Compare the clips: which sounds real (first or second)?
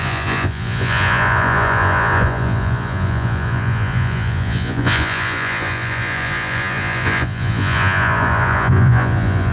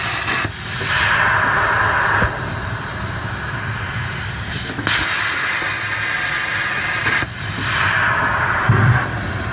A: second